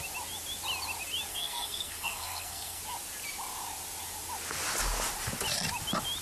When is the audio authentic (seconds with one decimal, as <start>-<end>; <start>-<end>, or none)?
0.0-1.3; 2.8-6.2